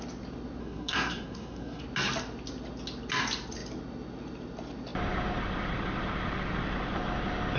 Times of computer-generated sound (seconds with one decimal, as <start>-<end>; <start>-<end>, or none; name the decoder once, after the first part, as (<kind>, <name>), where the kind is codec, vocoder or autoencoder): 0.6-1.8 (codec, SNAC)